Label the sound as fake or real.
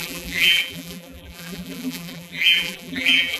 fake